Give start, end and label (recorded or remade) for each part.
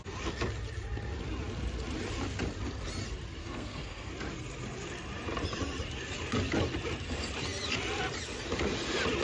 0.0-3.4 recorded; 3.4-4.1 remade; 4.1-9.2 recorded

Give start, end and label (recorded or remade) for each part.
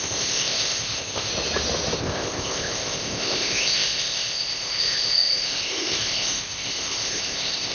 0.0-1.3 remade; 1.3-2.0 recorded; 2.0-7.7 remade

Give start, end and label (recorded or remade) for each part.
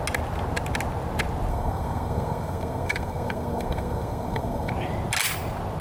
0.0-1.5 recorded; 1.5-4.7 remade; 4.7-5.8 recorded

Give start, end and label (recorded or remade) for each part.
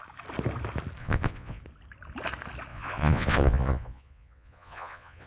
0.0-1.0 recorded; 1.0-1.6 remade; 1.6-2.7 recorded; 2.7-5.3 remade